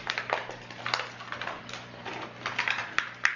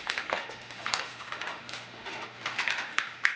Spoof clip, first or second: second